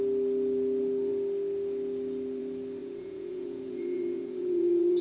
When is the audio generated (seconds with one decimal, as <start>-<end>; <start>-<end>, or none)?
2.8-5.0